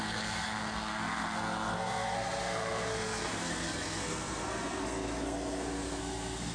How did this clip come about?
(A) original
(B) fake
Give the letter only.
B